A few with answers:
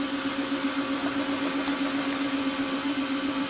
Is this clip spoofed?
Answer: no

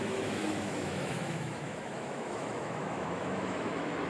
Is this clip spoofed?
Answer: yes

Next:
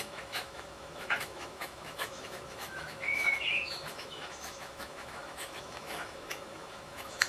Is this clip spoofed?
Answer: yes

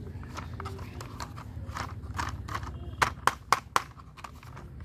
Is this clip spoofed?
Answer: no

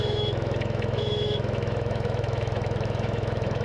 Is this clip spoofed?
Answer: yes